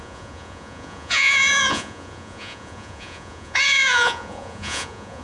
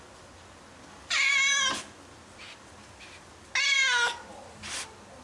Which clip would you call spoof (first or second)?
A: first